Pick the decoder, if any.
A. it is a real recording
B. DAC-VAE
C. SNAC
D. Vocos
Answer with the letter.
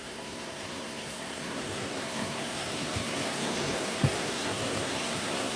C